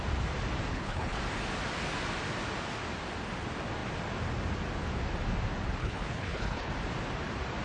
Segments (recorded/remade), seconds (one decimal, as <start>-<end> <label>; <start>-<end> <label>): 0.0-0.7 recorded; 0.7-1.2 remade; 1.2-5.8 recorded; 5.8-6.7 remade; 6.7-7.6 recorded